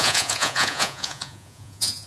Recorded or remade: remade